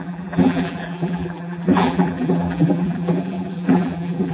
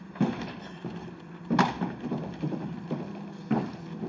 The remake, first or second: first